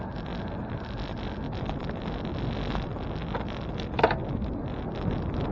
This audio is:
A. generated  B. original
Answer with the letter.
B